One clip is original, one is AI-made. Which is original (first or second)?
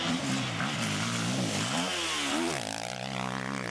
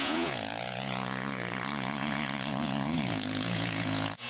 first